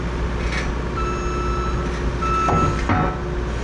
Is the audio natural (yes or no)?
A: yes